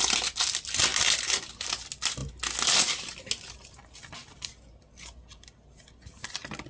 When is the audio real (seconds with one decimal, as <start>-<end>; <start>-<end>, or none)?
0.0-6.7